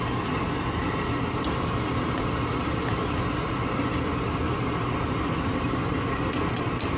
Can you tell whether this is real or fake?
real